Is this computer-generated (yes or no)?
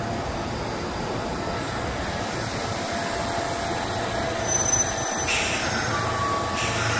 no